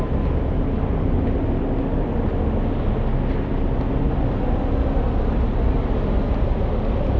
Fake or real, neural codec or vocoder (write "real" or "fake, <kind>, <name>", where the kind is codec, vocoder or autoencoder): real